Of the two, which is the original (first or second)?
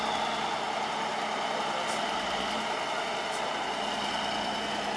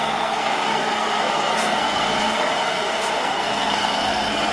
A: first